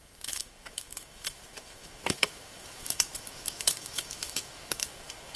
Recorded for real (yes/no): no